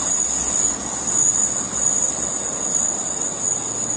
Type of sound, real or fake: real